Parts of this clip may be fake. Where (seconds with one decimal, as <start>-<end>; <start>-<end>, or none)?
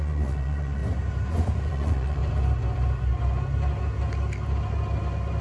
0.0-0.8; 1.3-2.2